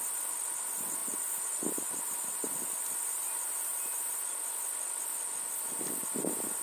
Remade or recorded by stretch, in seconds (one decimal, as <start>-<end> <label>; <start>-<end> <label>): 0.0-1.0 recorded; 1.0-3.2 remade; 3.2-6.6 recorded